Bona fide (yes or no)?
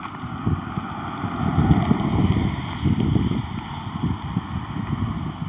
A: yes